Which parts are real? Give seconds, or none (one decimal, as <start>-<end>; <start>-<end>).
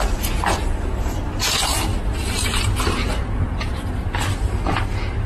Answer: 0.0-0.6; 1.4-2.5; 3.8-5.3